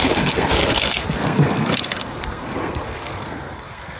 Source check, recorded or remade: remade